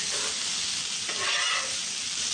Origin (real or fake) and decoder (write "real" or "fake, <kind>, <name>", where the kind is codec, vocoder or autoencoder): real